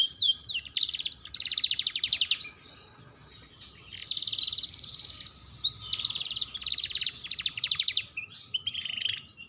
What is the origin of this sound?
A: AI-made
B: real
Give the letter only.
B